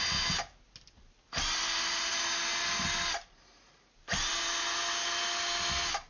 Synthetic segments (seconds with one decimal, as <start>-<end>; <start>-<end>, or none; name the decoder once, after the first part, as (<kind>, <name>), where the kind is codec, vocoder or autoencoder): none